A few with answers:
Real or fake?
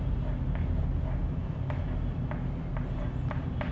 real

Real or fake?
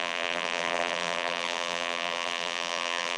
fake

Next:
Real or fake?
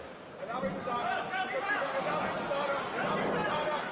real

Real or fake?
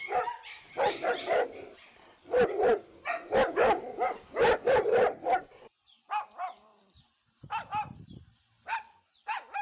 fake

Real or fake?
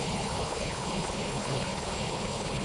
fake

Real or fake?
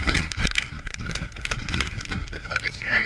fake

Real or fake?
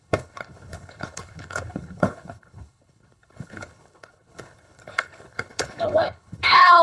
fake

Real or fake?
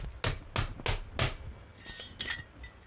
real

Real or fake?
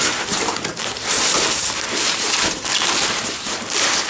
fake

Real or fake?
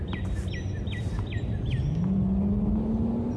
real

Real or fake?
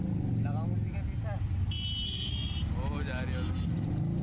real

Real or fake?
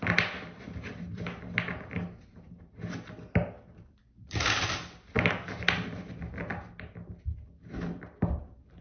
real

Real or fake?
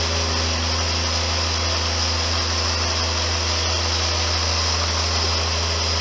real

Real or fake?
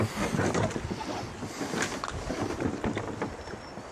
real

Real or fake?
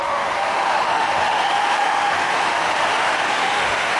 fake